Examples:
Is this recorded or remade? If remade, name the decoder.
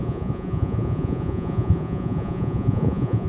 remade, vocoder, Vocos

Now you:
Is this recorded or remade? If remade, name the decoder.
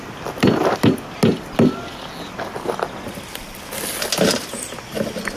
recorded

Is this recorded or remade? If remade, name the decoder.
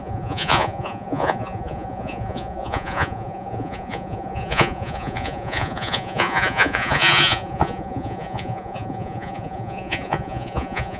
remade, vocoder, Vocos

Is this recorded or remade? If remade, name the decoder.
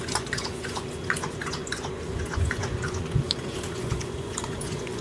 remade, vocoder, Vocos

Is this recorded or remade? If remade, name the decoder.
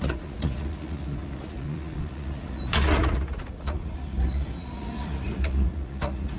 remade, vocoder, Vocos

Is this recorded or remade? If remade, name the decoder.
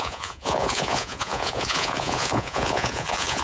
remade, vocoder, Vocos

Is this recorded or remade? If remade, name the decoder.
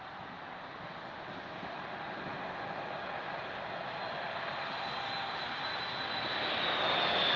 recorded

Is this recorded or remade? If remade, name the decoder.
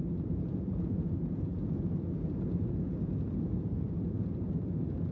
remade, vocoder, Vocos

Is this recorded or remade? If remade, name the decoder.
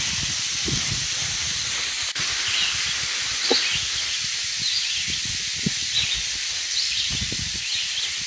recorded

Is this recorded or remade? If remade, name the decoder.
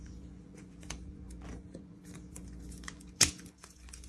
remade, vocoder, Vocos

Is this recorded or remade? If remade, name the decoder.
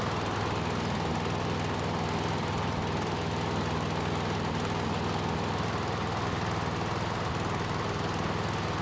recorded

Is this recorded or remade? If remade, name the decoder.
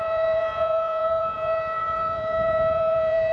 remade, vocoder, Vocos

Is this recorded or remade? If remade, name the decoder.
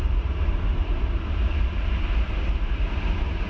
recorded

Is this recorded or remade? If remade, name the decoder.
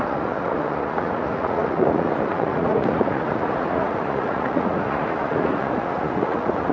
remade, vocoder, Vocos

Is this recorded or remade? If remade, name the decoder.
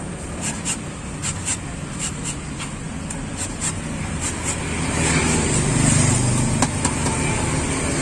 recorded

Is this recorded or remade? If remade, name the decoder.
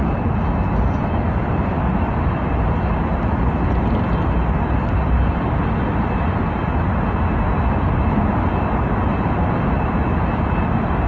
recorded